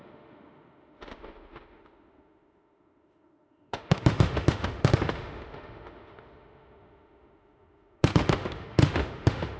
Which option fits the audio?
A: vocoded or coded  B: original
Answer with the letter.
A